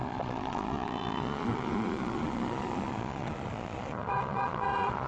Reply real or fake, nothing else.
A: fake